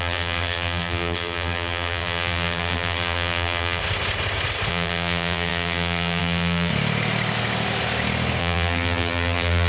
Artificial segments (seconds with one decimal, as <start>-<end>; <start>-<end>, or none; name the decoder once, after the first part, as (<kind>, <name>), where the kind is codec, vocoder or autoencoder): 0.0-3.8 (vocoder, BigVGAN v2); 4.7-6.7; 8.4-9.7